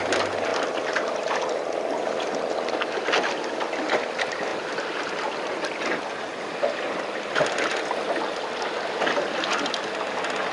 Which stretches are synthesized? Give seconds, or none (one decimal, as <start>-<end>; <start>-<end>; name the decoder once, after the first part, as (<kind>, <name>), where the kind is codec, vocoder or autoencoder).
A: none